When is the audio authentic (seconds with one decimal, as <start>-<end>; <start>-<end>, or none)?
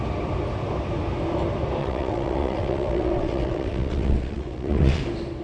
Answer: 0.0-1.8; 5.0-5.4